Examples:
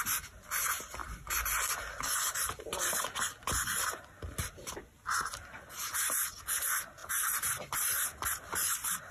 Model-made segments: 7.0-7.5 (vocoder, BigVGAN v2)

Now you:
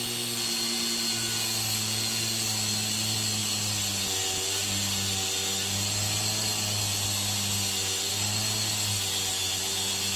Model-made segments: none

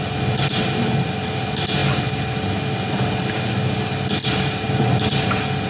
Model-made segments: 4.2-5.1 (vocoder, BigVGAN v2)

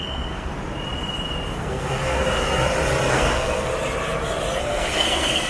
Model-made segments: 0.0-0.5 (codec, SNAC); 1.6-2.2; 3.1-3.7; 4.6-5.5

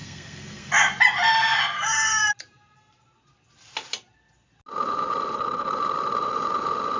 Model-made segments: 0.0-0.7 (codec, SNAC)

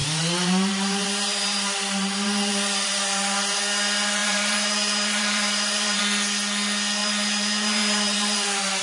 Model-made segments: 0.0-3.6 (vocoder, BigVGAN v2); 4.2-6.0; 7.0-8.8

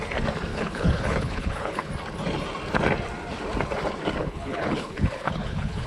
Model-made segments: 0.5-1.9 (codec, HILCodec); 4.2-5.9